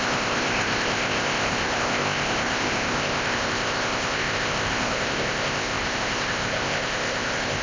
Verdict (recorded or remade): remade